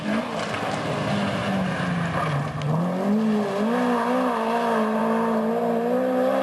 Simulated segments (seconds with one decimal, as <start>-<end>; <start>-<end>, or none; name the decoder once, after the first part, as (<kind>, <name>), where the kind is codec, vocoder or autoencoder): none